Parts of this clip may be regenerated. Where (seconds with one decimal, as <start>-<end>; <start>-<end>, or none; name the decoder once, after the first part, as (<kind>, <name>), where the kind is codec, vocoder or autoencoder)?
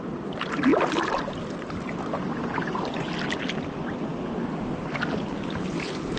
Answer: none